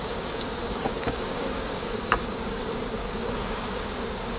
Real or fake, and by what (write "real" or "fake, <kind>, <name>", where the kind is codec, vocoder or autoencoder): fake, codec, DAC